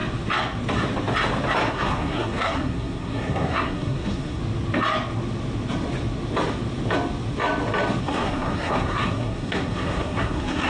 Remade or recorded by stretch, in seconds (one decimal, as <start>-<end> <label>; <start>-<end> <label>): 0.0-1.7 recorded; 1.7-4.4 remade; 4.4-8.0 recorded; 8.0-10.7 remade